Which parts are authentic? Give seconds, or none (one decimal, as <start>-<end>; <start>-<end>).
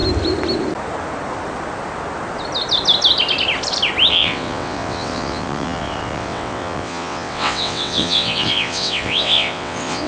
0.0-4.1